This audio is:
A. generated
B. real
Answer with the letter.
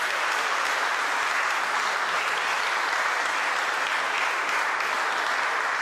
B